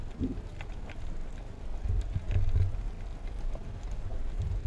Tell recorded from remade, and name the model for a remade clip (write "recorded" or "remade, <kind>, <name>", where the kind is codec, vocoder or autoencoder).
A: recorded